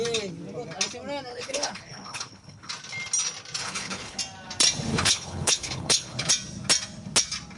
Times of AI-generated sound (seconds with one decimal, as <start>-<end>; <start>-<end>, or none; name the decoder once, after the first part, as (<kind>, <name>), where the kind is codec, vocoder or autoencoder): 1.3-2.7 (codec, HILCodec); 3.6-4.2; 4.9-6.3